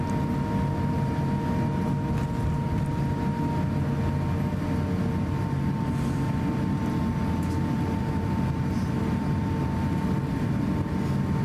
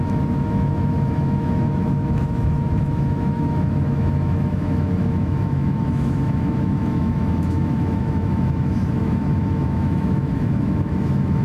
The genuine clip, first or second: first